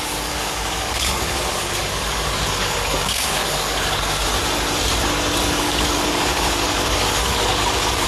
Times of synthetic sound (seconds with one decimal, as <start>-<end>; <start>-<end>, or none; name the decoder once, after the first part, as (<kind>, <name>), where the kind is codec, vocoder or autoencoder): 0.0-4.3 (codec, DAC); 5.6-8.1